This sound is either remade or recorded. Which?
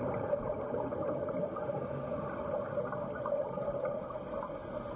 recorded